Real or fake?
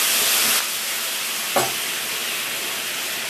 real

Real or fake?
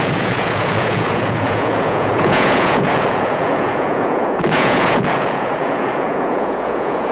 fake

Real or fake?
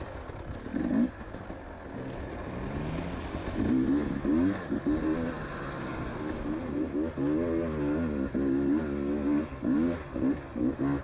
real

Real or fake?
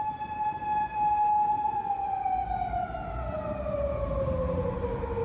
real